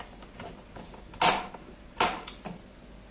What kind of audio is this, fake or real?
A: real